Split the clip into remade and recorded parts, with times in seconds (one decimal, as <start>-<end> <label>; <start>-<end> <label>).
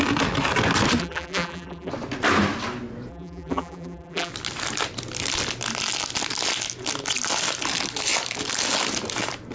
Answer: 0.0-1.0 recorded; 1.0-1.9 remade; 1.9-3.1 recorded; 3.1-4.3 remade; 4.3-9.5 recorded